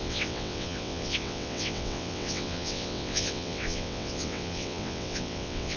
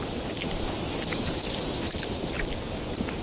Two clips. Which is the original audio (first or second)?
second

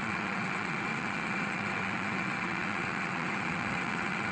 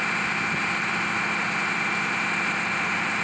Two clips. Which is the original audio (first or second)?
second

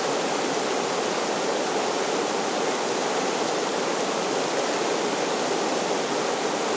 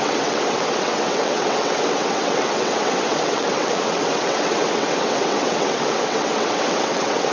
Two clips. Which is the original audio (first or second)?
first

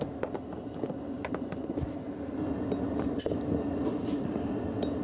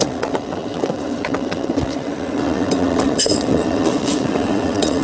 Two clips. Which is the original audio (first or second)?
first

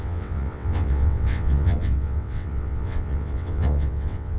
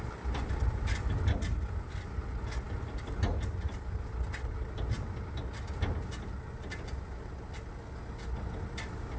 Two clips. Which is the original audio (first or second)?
second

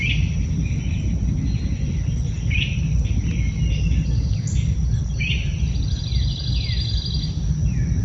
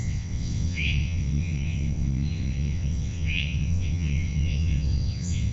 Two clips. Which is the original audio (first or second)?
first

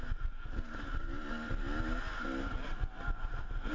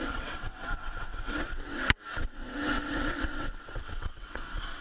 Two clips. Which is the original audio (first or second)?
first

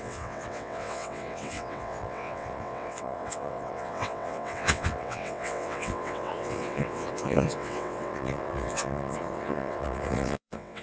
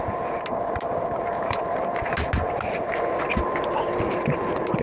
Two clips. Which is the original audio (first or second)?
second